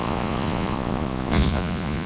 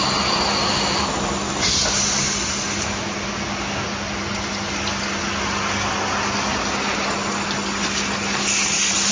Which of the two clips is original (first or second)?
second